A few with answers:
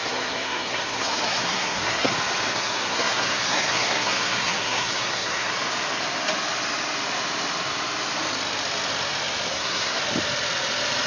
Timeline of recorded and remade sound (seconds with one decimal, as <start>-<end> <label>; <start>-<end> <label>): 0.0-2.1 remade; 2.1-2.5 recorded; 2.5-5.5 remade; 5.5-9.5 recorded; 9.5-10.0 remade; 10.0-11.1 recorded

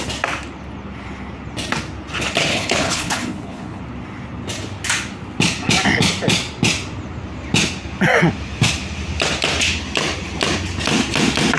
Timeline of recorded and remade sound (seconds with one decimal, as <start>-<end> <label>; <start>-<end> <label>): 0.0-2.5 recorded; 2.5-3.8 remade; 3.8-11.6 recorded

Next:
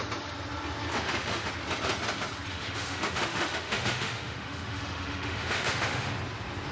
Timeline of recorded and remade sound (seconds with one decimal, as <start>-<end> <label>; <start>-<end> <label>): 0.0-0.9 recorded; 0.9-1.5 remade; 1.5-2.5 recorded; 2.5-6.1 remade; 6.1-6.7 recorded